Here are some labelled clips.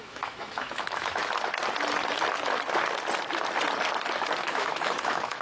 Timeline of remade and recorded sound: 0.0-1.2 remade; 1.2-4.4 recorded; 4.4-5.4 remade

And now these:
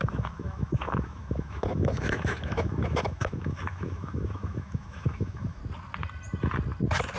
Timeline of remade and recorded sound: 0.0-5.6 remade; 5.6-7.2 recorded